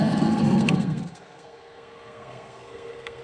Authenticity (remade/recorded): remade